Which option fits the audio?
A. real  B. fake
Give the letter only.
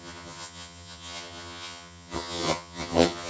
B